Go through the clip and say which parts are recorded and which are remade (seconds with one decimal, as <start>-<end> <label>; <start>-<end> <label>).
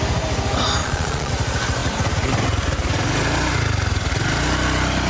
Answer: 0.0-0.8 recorded; 0.8-1.3 remade; 1.3-5.1 recorded